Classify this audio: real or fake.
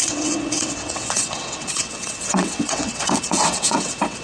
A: fake